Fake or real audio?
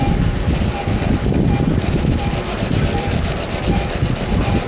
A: real